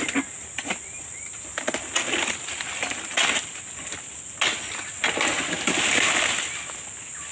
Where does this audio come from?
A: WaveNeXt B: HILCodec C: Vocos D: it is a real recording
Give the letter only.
D